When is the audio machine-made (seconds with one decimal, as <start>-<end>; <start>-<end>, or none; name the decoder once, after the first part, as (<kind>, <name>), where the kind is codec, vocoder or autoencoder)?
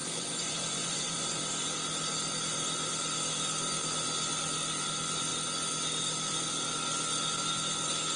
0.0-1.4 (vocoder, Vocos)